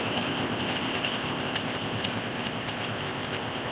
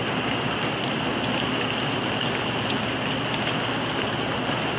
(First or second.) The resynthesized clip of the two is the first